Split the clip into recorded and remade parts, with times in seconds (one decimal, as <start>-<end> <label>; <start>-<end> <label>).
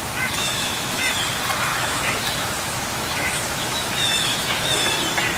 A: 0.0-0.4 recorded; 0.4-1.0 remade; 1.0-1.7 recorded; 1.7-4.9 remade; 4.9-5.4 recorded